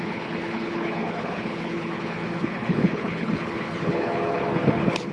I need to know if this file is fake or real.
fake